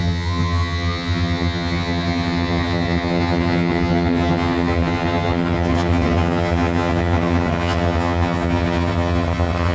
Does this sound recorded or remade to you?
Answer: remade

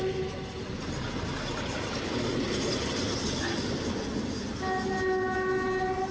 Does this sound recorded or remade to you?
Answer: recorded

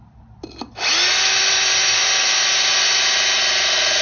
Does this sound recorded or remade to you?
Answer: recorded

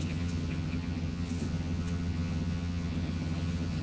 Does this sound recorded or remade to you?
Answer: remade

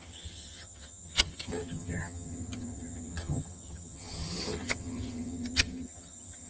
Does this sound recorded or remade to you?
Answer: remade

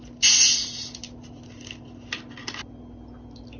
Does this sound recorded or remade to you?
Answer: recorded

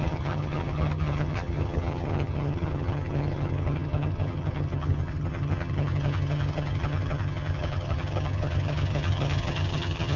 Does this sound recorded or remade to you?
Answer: remade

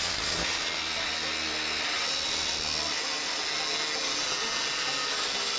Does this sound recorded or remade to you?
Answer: recorded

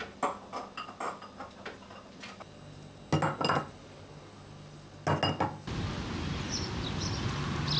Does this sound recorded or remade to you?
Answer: recorded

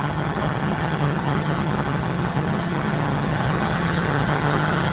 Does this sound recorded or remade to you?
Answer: remade